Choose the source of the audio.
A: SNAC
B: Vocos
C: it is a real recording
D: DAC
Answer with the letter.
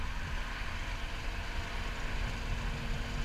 C